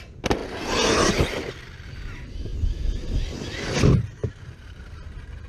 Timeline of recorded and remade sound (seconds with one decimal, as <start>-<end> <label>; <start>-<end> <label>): 0.0-4.2 recorded; 4.2-4.8 remade; 4.8-5.5 recorded